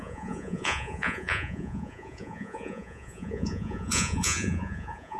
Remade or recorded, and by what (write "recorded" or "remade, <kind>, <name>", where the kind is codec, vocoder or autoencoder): remade, vocoder, Vocos